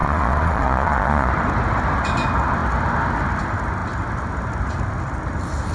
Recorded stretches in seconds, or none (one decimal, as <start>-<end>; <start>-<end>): 1.3-5.7

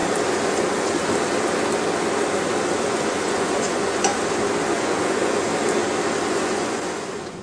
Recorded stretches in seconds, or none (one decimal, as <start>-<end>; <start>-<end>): 0.0-2.8; 4.1-4.7; 5.5-6.3

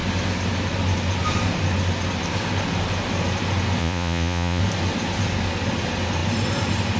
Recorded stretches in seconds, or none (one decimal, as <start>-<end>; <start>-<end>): 0.0-3.8; 4.6-7.0